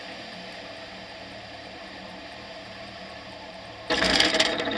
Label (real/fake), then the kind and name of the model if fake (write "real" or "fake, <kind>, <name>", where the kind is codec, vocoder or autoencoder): fake, vocoder, BigVGAN v2